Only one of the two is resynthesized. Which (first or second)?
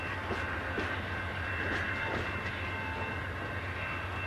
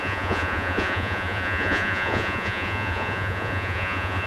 second